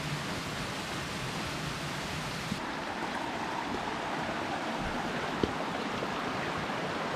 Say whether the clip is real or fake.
real